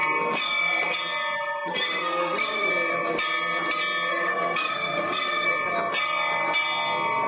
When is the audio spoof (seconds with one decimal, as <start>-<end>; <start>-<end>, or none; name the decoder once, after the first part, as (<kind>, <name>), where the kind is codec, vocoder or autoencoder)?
1.7-2.7 (codec, SNAC); 4.1-5.5